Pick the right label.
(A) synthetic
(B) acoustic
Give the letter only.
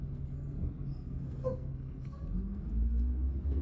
A